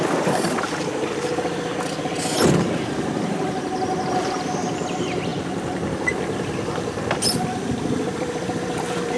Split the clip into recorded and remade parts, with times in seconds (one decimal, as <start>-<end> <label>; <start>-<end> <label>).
0.0-9.2 remade